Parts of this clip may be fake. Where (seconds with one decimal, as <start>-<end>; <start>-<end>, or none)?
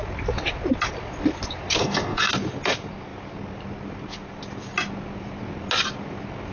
1.8-2.3